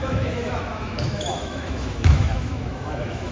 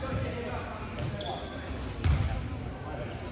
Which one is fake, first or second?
first